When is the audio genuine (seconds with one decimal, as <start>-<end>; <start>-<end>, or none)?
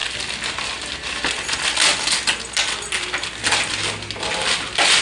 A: 0.0-5.0